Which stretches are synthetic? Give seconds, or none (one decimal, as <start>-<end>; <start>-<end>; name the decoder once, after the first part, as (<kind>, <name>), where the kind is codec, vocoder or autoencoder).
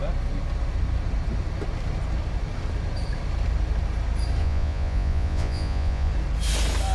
4.4-6.1 (vocoder, Vocos)